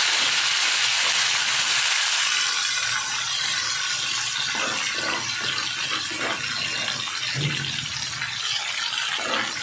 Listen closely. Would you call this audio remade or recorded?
recorded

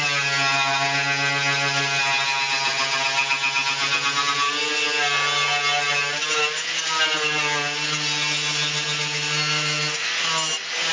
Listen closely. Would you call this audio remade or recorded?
recorded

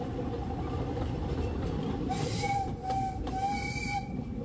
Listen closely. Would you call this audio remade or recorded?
recorded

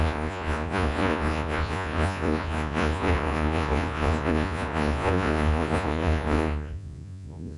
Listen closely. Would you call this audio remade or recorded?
remade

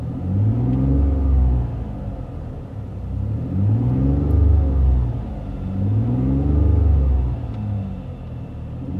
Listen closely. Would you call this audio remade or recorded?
recorded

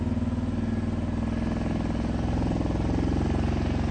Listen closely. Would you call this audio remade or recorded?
recorded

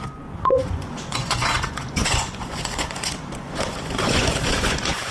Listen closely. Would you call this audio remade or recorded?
remade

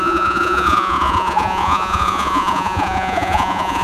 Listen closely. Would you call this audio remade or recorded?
remade